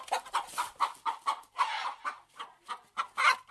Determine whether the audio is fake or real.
real